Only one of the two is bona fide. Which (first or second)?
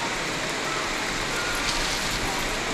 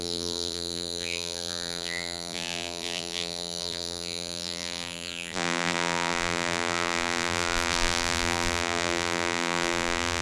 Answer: first